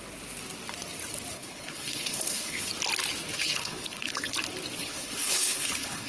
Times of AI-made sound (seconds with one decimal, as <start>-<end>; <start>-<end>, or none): 1.3-2.7; 3.3-4.3; 4.8-6.1